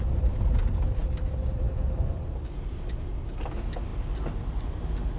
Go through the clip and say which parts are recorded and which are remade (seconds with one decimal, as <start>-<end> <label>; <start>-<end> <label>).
0.0-1.0 recorded; 1.0-3.3 remade; 3.3-5.2 recorded

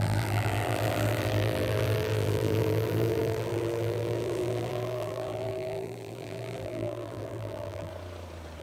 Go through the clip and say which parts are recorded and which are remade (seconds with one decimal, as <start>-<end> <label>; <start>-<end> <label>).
0.0-7.9 remade; 7.9-8.6 recorded

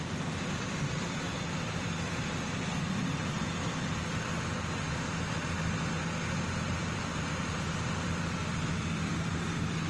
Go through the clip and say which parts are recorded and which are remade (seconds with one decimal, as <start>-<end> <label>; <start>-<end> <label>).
0.0-4.3 remade; 4.3-4.9 recorded; 4.9-8.4 remade; 8.4-9.3 recorded; 9.3-9.9 remade

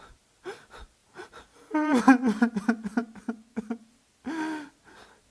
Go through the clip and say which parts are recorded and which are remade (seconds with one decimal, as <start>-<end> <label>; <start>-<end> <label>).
0.0-1.0 recorded; 1.0-2.0 remade; 2.0-5.3 recorded